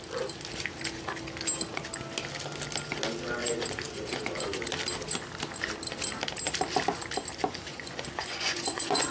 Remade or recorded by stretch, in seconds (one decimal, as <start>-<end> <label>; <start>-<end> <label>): 0.0-3.4 recorded; 3.4-4.6 remade; 4.6-7.7 recorded; 7.7-9.1 remade